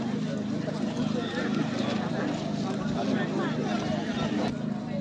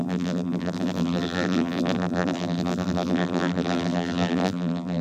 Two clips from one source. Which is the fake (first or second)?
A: second